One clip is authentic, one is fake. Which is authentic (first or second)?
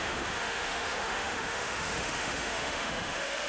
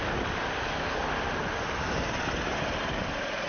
second